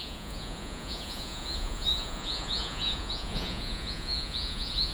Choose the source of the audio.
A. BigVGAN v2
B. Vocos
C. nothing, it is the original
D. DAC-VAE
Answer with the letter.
B